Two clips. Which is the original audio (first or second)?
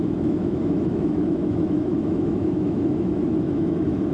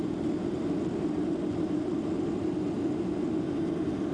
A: second